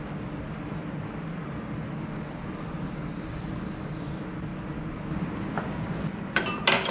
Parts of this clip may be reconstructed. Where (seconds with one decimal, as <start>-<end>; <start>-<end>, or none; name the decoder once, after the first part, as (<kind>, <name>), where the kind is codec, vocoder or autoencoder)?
none